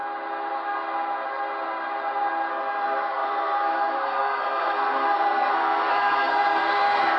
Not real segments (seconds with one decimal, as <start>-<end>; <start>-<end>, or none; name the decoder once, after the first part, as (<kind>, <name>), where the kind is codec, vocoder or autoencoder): 2.5-7.2 (codec, SNAC)